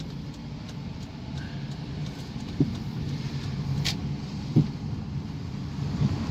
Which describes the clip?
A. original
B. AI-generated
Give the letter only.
B